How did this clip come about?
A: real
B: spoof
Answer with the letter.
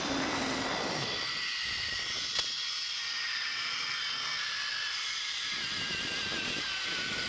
A